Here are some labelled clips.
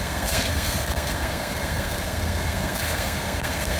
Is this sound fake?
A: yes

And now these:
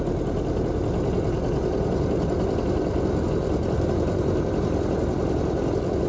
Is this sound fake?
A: no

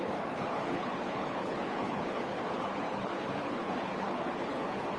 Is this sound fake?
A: yes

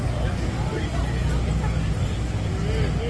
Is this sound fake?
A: no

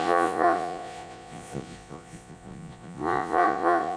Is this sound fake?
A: yes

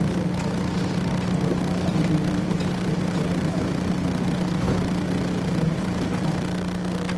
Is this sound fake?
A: no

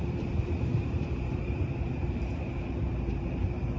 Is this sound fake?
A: yes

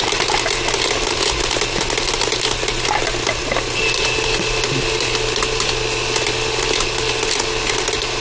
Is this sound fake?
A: no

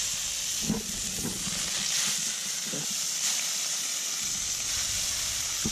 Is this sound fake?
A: no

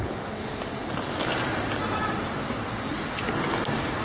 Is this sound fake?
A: no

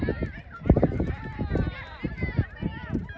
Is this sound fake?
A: no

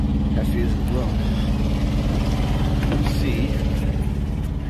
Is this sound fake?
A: no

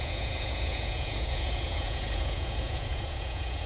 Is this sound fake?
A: yes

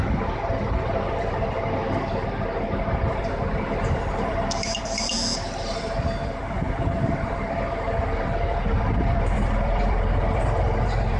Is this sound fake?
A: yes